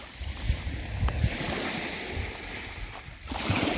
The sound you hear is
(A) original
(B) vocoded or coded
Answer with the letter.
B